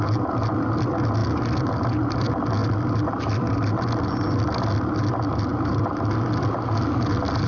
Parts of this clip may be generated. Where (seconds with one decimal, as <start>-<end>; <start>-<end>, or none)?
none